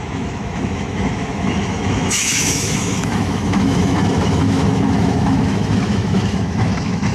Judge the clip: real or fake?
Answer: fake